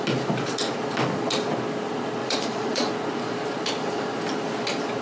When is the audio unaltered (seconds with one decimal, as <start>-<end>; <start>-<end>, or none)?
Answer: 0.0-2.2; 2.9-5.0